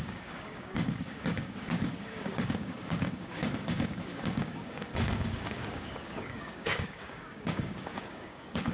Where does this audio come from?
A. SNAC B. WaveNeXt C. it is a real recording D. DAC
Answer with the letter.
D